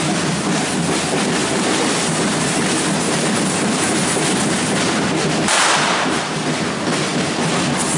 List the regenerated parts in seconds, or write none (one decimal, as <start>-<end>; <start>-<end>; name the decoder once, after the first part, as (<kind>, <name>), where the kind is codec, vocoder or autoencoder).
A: 1.4-6.2 (vocoder, BigVGAN v2)